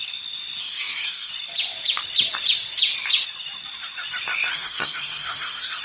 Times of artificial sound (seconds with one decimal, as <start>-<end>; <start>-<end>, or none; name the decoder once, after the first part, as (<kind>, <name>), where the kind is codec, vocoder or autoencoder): 0.6-1.3 (codec, SNAC); 4.5-5.8